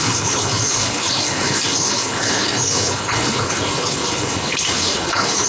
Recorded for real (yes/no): no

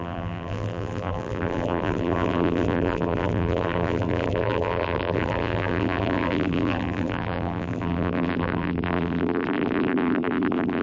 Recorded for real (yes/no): no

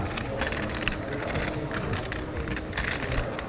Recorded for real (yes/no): yes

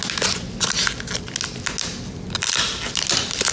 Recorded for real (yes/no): yes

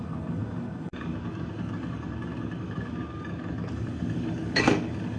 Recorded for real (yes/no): no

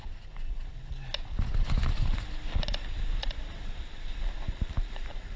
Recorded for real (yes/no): yes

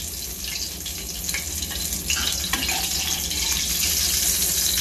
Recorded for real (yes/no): yes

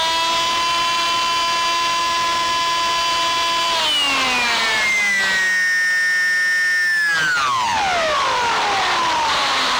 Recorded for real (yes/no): yes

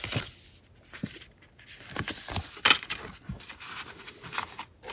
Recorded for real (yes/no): yes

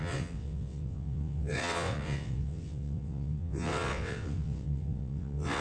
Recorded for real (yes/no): no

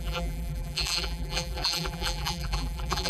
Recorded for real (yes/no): no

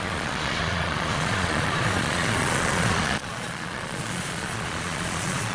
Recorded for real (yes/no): no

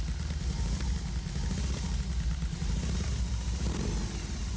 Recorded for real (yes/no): yes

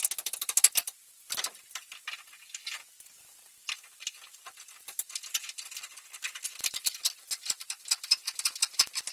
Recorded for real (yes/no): yes